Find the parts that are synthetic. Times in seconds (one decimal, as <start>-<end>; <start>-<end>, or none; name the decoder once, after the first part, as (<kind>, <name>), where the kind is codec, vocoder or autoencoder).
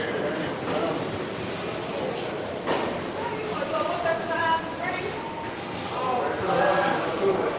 none